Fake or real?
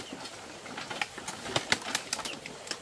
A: real